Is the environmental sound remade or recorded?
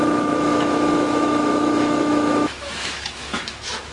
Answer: remade